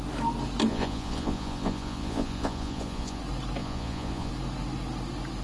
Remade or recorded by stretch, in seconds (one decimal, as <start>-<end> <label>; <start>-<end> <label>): 0.0-0.7 recorded; 0.7-3.2 remade; 3.2-3.6 recorded; 3.6-4.3 remade; 4.3-5.4 recorded